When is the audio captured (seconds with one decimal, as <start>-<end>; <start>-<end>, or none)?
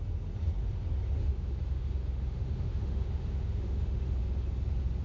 0.0-1.2; 4.2-5.0